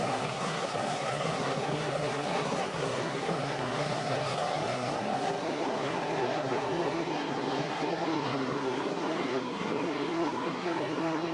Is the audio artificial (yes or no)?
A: yes